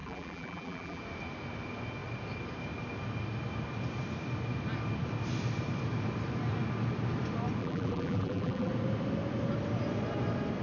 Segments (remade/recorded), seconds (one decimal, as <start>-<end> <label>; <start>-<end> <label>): 0.0-1.0 remade; 1.0-7.6 recorded; 7.6-8.7 remade; 8.7-10.6 recorded